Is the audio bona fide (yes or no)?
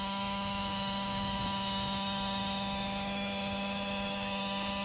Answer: no